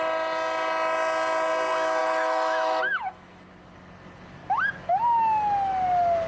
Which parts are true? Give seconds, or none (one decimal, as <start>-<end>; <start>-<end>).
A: 0.0-2.0; 3.5-6.3